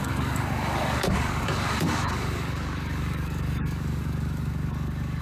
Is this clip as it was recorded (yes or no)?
no